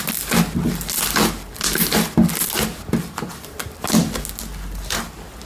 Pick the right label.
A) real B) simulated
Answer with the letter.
A